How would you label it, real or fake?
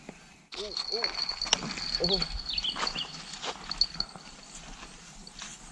real